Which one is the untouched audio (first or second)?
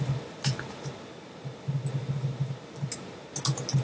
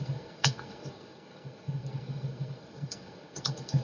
first